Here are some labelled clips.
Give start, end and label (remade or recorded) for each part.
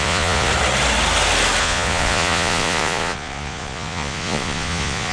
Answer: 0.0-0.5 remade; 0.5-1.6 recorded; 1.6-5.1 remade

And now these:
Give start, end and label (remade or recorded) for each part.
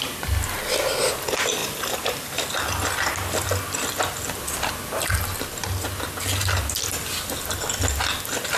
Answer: 0.0-8.6 recorded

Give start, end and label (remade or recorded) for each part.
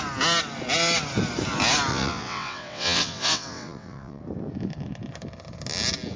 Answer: 0.0-1.9 recorded; 1.9-4.2 remade; 4.2-6.2 recorded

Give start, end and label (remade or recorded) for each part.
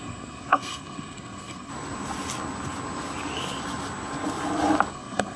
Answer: 0.0-1.7 remade; 1.7-4.9 recorded; 4.9-5.4 remade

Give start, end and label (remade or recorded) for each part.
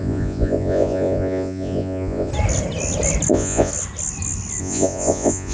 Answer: 0.0-2.3 remade; 2.3-3.3 recorded; 3.3-3.7 remade; 3.7-4.6 recorded; 4.6-5.5 remade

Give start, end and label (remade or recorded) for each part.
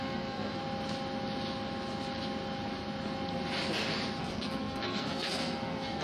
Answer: 0.0-0.6 remade; 0.6-4.2 recorded; 4.2-6.0 remade